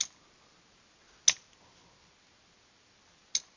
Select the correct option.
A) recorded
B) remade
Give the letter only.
A